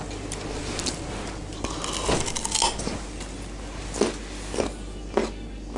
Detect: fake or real real